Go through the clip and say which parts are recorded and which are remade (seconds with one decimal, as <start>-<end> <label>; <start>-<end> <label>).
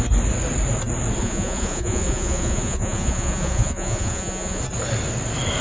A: 0.0-1.2 recorded; 1.2-4.6 remade; 4.6-5.6 recorded